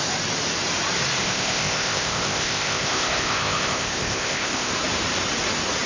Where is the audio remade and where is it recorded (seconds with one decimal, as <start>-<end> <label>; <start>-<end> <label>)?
0.0-1.2 recorded; 1.2-4.7 remade; 4.7-5.9 recorded